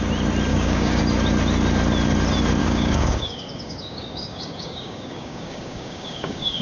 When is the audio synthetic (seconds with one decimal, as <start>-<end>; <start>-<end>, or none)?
0.5-1.0; 2.6-6.6